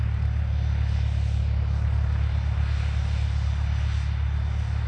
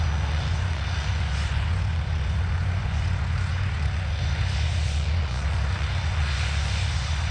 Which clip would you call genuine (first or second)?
first